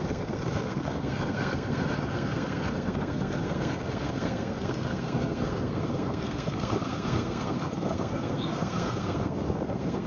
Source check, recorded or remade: remade